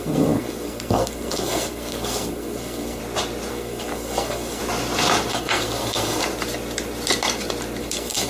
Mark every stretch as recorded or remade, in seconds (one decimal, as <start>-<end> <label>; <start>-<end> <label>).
0.0-3.0 remade; 3.0-3.5 recorded; 3.5-4.6 remade; 4.6-5.3 recorded; 5.3-6.2 remade; 6.2-7.8 recorded; 7.8-8.3 remade